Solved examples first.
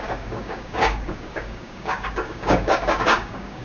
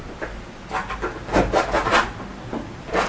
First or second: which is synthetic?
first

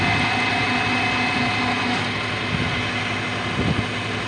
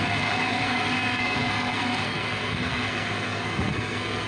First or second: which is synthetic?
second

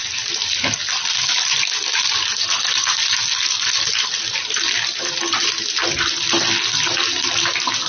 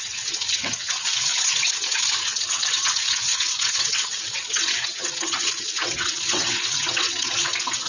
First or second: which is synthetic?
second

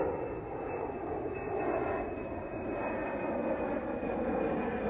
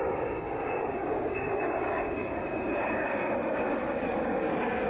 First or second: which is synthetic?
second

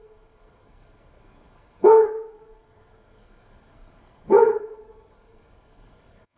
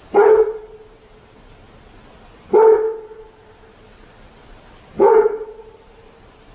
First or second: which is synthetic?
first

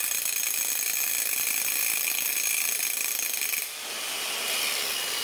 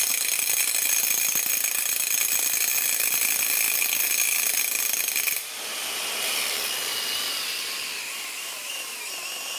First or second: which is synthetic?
second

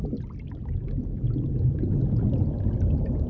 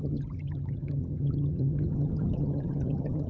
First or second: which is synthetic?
second